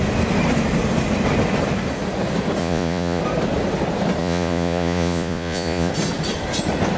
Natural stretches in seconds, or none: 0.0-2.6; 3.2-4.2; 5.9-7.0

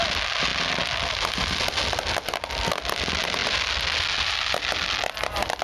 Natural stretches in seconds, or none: 0.0-5.6

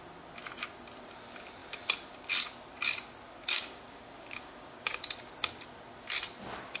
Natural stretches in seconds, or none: 0.0-3.5; 5.0-6.8

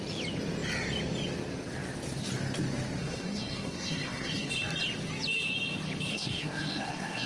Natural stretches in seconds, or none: 0.0-3.0; 4.5-6.1

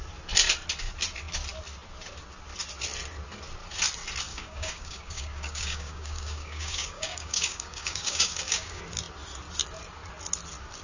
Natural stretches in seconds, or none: 0.0-4.3; 8.8-10.8

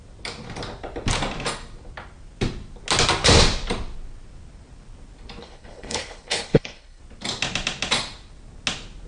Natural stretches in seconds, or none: 0.0-5.4; 7.0-9.1